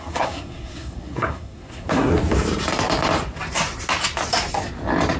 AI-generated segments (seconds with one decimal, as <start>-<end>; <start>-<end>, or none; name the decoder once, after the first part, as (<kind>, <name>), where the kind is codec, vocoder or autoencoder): 0.0-2.1 (codec, SNAC)